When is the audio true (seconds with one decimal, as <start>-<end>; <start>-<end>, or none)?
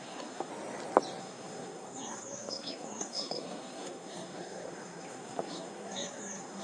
0.5-1.2